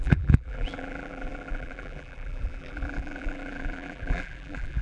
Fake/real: fake